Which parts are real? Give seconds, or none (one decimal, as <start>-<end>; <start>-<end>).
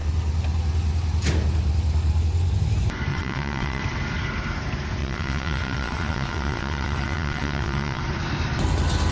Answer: 0.0-3.1; 3.8-5.0; 8.0-9.1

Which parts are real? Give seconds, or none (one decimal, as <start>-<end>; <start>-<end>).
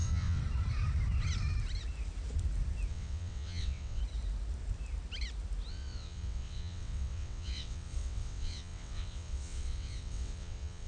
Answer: 0.4-2.9; 4.0-5.7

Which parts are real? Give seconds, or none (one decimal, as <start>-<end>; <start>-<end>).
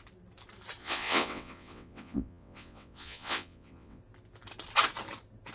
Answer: 0.0-0.8; 4.0-5.5